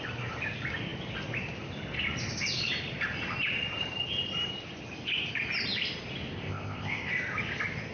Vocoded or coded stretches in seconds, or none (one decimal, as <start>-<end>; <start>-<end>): 6.3-7.1